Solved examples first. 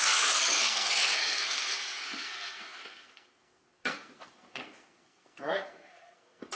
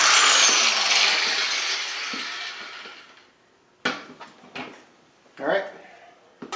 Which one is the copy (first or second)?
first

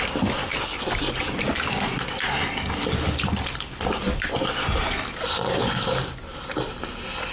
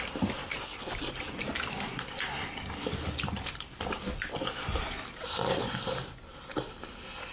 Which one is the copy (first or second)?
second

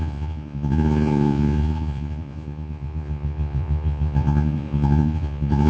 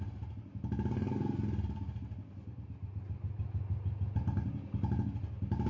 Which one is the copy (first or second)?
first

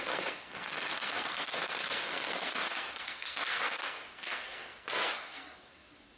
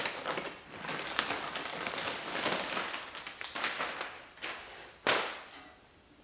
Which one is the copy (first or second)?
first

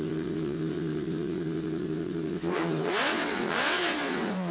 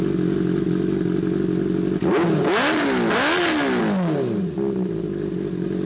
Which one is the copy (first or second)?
first